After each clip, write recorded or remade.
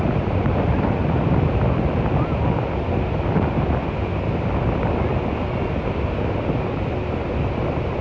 recorded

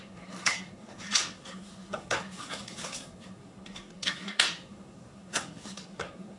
remade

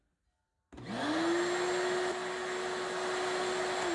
recorded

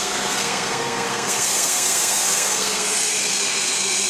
remade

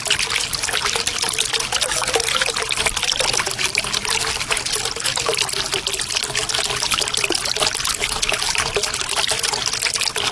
recorded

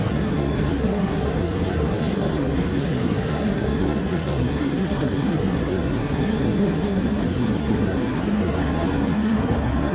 remade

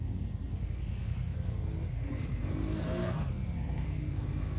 remade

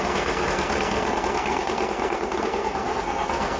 remade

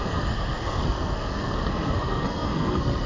remade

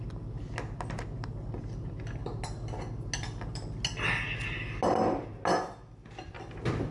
recorded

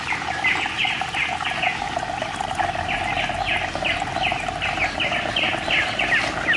recorded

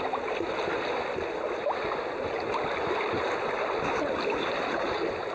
recorded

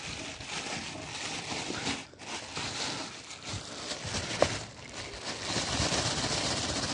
recorded